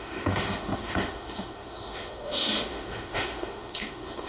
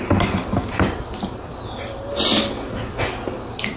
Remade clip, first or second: first